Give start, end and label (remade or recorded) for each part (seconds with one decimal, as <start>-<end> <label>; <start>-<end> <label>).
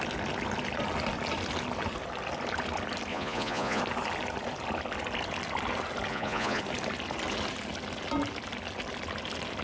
0.0-3.1 recorded; 3.1-3.8 remade; 3.8-6.1 recorded; 6.1-6.6 remade; 6.6-9.6 recorded